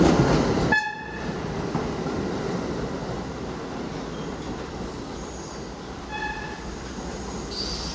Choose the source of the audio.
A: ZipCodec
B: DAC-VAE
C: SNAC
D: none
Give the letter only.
D